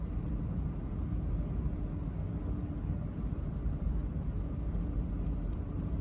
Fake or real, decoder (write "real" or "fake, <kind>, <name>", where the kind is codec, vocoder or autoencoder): real